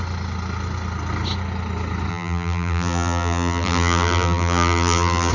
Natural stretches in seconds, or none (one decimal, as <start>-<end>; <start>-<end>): 0.0-2.1